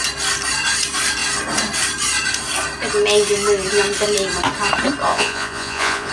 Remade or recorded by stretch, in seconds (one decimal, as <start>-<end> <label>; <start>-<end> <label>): 0.0-5.1 recorded; 5.1-6.1 remade